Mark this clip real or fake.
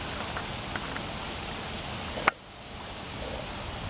real